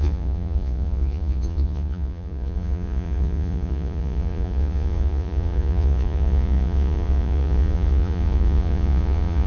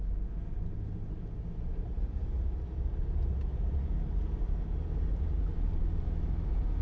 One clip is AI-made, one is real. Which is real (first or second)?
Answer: second